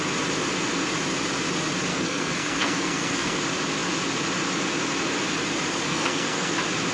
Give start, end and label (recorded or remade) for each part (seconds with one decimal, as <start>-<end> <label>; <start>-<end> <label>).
0.0-1.9 recorded; 1.9-3.4 remade; 3.4-5.9 recorded; 5.9-6.5 remade; 6.5-6.9 recorded